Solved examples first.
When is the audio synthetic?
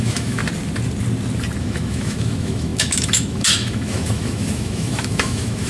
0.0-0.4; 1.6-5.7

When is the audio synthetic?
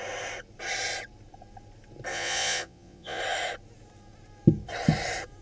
2.1-3.2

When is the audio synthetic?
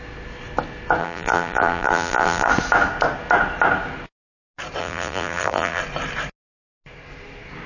1.0-2.5; 4.8-5.8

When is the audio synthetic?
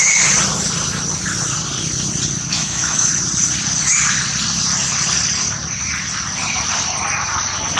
2.5-3.1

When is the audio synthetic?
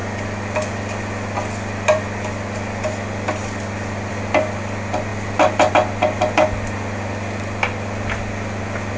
none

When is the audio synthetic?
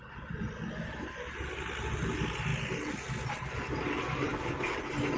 4.3-4.8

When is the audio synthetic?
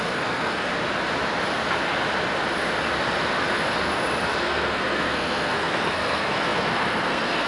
0.0-0.7; 4.4-7.5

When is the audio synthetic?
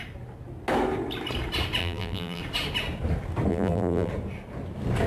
1.8-2.4; 3.5-4.1